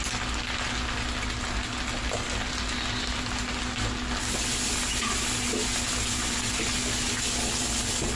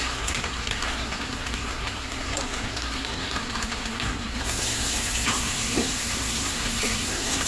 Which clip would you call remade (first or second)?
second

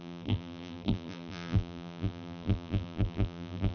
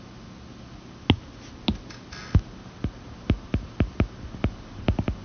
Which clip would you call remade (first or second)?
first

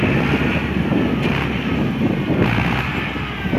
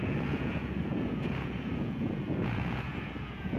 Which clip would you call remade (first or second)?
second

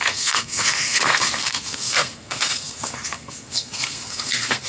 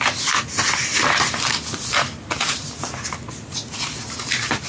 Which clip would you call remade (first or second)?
first